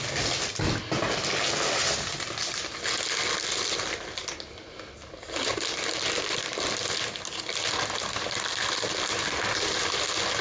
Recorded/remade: recorded